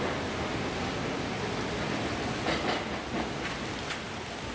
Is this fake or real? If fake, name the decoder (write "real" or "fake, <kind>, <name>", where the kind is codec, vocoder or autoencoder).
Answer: real